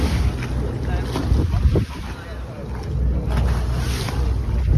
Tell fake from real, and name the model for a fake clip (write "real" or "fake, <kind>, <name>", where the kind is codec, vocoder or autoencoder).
real